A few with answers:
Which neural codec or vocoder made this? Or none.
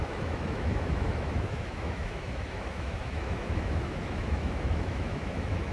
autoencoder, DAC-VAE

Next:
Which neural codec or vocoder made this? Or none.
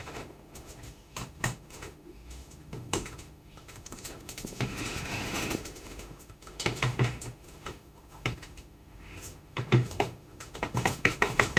autoencoder, DAC-VAE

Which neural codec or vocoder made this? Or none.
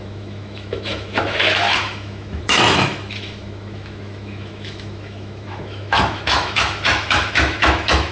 autoencoder, DAC-VAE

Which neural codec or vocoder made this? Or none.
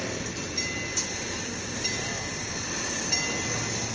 none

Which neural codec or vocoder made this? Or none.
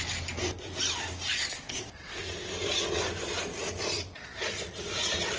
none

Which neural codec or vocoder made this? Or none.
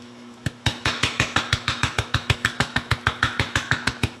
autoencoder, DAC-VAE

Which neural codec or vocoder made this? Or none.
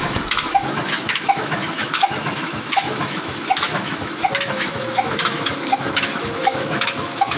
autoencoder, DAC-VAE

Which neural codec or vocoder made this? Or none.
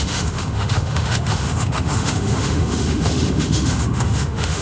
autoencoder, DAC-VAE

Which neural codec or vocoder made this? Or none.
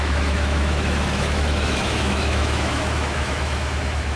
autoencoder, DAC-VAE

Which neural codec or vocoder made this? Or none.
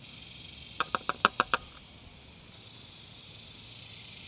none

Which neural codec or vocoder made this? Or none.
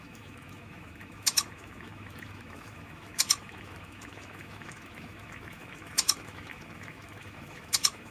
autoencoder, DAC-VAE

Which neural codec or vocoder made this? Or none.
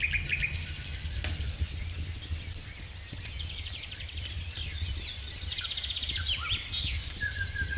none